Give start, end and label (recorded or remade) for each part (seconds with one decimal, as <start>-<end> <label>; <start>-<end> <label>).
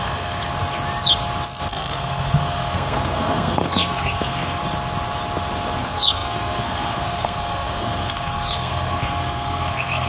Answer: 0.0-0.5 remade; 0.5-1.7 recorded; 1.7-4.6 remade; 4.6-5.8 recorded; 5.8-10.1 remade